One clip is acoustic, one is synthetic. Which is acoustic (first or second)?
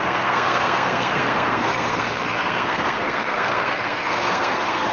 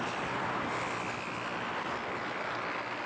second